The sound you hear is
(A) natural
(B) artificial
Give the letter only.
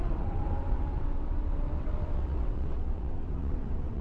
B